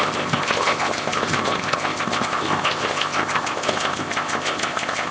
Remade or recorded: remade